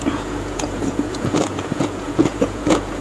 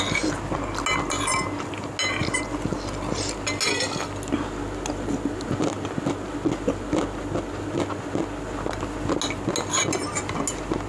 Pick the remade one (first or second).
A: first